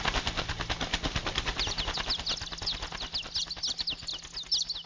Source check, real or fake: real